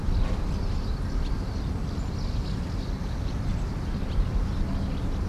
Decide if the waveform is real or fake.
real